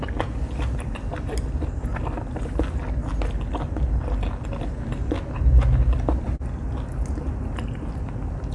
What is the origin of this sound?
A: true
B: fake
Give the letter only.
A